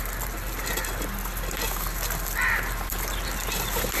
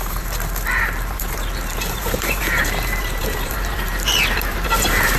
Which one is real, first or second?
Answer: first